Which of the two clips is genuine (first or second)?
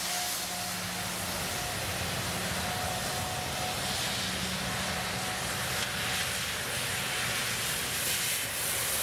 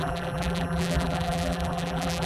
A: first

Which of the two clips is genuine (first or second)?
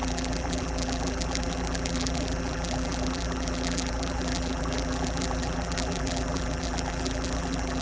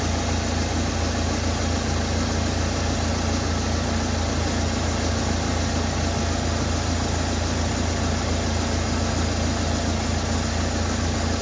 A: second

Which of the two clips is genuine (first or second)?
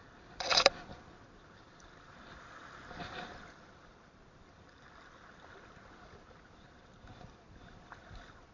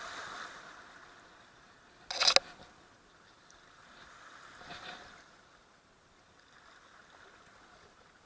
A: second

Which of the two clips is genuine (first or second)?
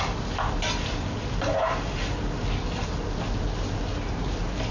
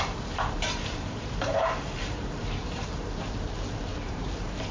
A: first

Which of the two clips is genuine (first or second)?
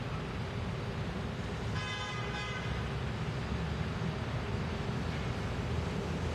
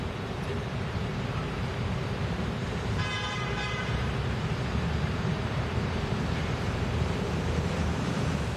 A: first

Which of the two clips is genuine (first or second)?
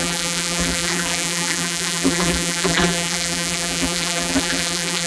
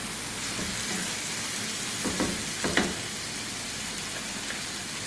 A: second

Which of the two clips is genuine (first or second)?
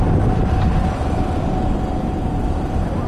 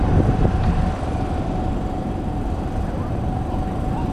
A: first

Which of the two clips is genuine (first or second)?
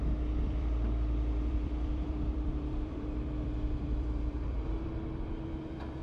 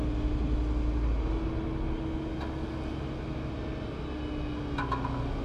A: second